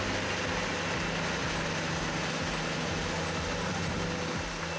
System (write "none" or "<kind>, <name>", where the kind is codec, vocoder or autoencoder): none